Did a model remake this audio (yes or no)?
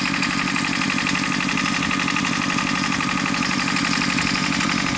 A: no